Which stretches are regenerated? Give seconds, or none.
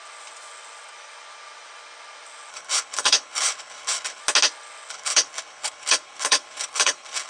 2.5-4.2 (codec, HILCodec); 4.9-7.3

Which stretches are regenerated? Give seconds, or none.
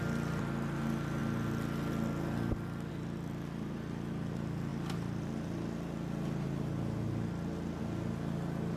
none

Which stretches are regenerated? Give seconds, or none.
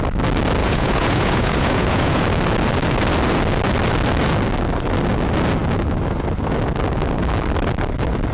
0.6-2.2 (vocoder, Vocos)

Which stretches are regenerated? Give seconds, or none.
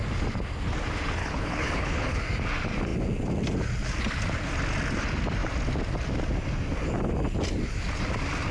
1.2-2.2 (codec, HILCodec)